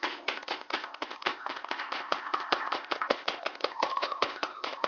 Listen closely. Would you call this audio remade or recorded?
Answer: remade